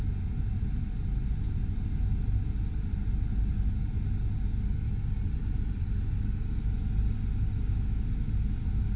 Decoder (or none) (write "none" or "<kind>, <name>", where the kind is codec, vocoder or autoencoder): none